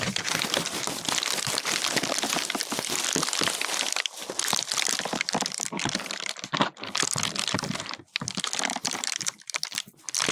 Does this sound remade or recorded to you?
remade